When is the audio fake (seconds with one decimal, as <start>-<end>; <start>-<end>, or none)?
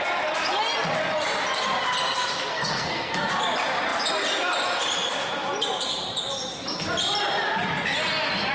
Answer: 2.5-3.3